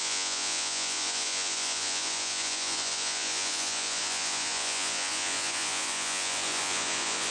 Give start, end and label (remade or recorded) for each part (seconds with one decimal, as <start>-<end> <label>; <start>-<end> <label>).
0.0-7.3 remade